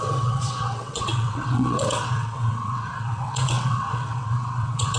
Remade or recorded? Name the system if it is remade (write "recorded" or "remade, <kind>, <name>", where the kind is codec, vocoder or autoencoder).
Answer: remade, vocoder, WaveNeXt